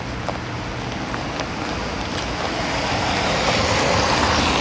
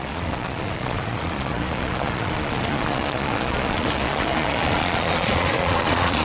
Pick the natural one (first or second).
first